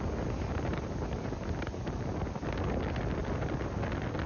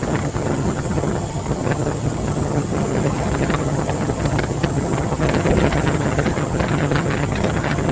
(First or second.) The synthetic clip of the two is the second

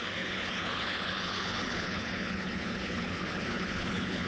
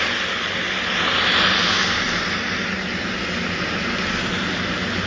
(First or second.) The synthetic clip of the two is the first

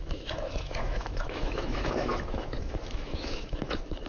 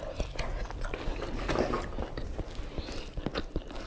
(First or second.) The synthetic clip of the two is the first